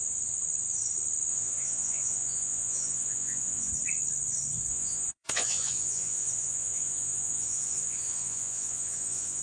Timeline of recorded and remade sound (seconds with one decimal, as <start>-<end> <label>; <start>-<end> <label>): 0.0-1.3 recorded; 1.3-3.7 remade; 3.7-4.7 recorded; 4.7-9.4 remade